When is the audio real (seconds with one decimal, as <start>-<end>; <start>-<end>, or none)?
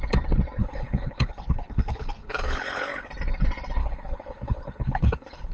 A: 0.0-0.6; 3.1-3.8